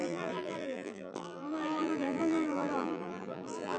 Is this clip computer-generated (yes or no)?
yes